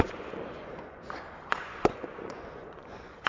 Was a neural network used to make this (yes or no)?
yes